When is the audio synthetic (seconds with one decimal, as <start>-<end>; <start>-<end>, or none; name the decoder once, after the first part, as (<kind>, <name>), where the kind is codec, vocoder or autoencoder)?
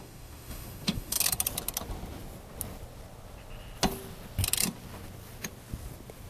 0.0-1.2 (autoencoder, DAC-VAE)